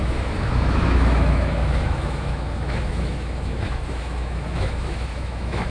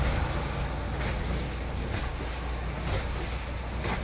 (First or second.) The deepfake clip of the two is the first